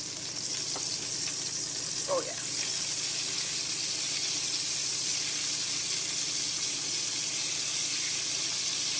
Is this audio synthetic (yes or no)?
no